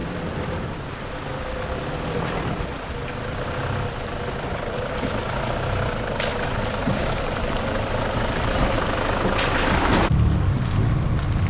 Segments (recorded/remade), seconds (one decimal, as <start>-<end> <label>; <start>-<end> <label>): 0.0-4.9 remade; 4.9-6.8 recorded; 6.8-9.7 remade; 9.7-11.5 recorded

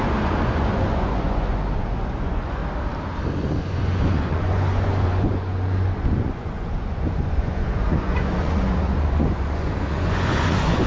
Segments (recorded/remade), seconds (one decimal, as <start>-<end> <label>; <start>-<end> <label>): 0.0-2.6 remade; 2.6-3.3 recorded; 3.3-10.9 remade

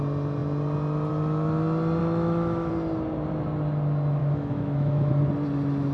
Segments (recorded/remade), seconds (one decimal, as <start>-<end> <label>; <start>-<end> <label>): 0.0-2.0 recorded; 2.0-2.7 remade; 2.7-4.2 recorded; 4.2-5.1 remade; 5.1-5.9 recorded